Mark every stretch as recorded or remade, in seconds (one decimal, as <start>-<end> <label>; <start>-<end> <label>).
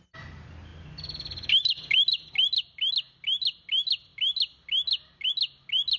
0.0-6.0 recorded